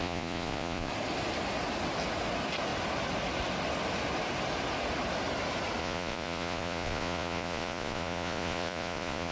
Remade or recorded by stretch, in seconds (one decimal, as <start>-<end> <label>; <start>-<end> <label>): 0.0-0.9 remade; 0.9-5.8 recorded; 5.8-9.3 remade